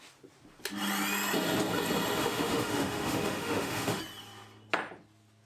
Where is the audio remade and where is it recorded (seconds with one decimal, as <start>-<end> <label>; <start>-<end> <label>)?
0.0-2.2 recorded; 2.2-4.0 remade; 4.0-5.5 recorded